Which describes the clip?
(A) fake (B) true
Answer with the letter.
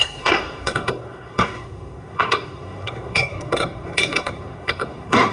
A